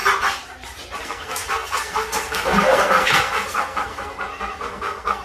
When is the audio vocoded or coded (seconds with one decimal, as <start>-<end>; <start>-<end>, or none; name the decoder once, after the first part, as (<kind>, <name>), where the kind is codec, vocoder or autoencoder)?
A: 1.0-5.2 (codec, SNAC)